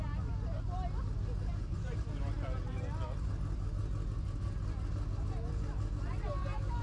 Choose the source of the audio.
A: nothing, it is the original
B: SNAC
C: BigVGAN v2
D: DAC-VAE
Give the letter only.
A